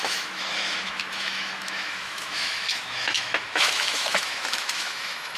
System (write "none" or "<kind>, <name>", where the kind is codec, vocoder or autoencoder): autoencoder, DAC-VAE